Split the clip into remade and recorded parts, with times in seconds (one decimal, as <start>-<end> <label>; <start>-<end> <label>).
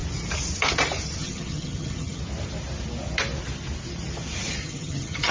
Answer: 0.0-1.2 recorded; 1.2-2.2 remade; 2.2-4.6 recorded; 4.6-5.3 remade